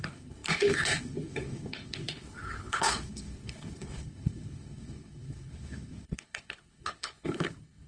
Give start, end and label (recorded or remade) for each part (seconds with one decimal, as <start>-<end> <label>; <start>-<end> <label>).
0.0-7.9 remade